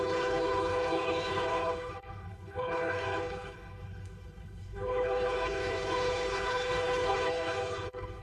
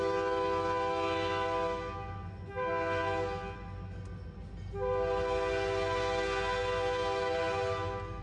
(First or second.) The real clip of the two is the second